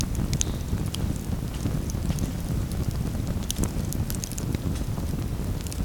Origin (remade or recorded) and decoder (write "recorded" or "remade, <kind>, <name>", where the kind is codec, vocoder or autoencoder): recorded